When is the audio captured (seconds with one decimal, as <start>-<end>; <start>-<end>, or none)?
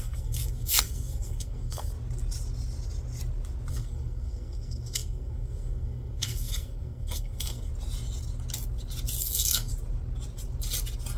1.9-3.7; 7.7-9.2; 9.7-11.2